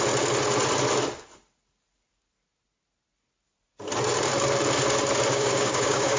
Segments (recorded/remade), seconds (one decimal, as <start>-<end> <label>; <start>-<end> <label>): 0.0-5.3 recorded; 5.3-6.2 remade